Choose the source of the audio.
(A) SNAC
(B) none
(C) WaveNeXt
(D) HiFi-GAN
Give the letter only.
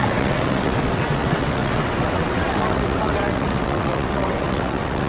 C